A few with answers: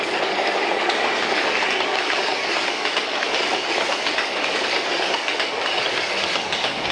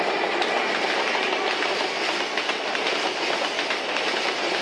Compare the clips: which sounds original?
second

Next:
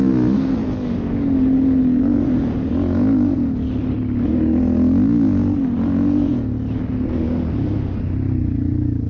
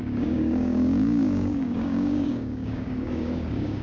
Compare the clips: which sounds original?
first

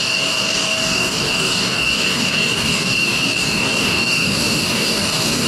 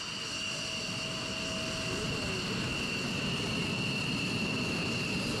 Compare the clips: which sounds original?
second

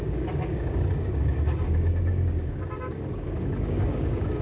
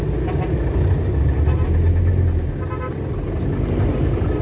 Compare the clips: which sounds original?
second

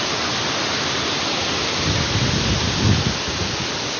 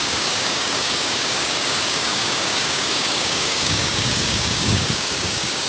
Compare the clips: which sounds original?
first